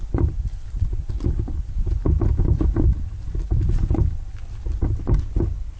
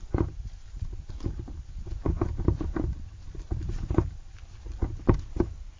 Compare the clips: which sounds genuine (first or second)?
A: first